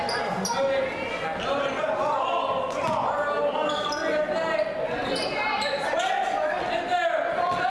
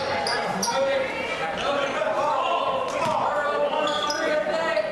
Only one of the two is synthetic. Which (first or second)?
second